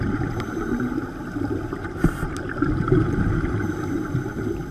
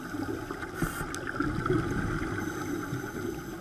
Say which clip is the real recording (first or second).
second